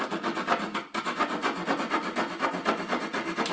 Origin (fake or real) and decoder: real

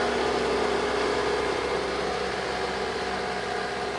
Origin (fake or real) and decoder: real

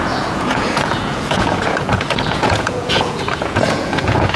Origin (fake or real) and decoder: fake, vocoder, Vocos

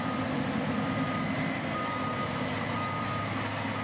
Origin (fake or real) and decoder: real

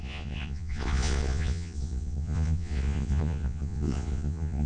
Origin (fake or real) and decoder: fake, vocoder, Vocos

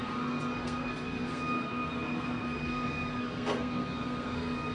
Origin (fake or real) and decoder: fake, codec, SNAC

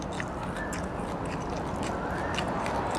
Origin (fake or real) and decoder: real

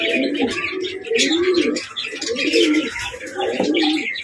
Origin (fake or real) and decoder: fake, vocoder, BigVGAN v2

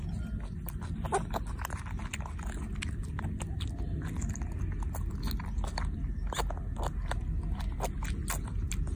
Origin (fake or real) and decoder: real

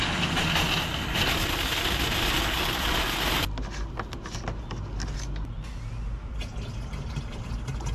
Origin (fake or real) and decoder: real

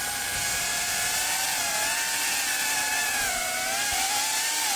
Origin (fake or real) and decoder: real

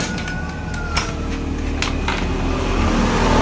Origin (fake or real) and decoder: real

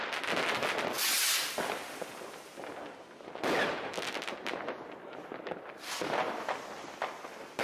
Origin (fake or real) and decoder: real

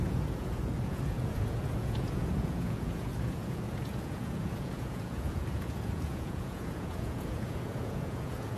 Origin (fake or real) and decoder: fake, vocoder, Vocos